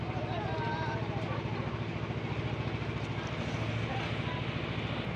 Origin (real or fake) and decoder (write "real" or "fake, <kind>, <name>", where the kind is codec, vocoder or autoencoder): real